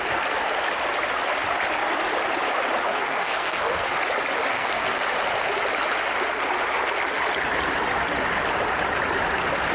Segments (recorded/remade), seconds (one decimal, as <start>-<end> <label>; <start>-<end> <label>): 0.0-2.9 recorded; 2.9-3.9 remade; 3.9-4.5 recorded; 4.5-5.0 remade; 5.0-9.7 recorded